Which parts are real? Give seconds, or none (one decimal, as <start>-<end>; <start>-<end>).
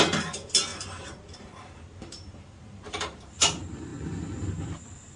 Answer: 0.0-0.7; 3.2-5.2